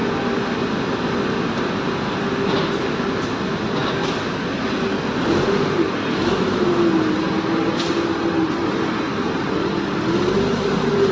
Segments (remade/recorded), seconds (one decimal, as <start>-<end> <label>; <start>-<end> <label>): 0.0-11.1 recorded